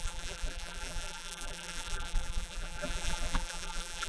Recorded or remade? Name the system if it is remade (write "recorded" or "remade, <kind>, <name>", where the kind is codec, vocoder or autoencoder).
remade, vocoder, BigVGAN v2